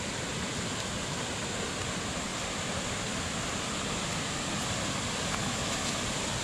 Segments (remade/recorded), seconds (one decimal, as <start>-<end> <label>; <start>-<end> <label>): 0.0-5.4 recorded; 5.4-5.9 remade; 5.9-6.4 recorded